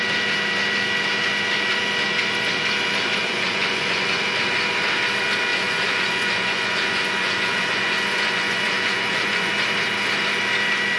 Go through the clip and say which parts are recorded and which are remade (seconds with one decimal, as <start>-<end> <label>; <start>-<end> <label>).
0.0-3.2 recorded; 3.2-4.2 remade; 4.2-5.5 recorded; 5.5-9.5 remade; 9.5-11.0 recorded